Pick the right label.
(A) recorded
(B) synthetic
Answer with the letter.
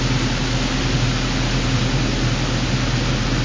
A